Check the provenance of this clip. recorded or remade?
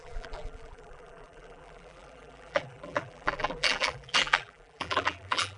remade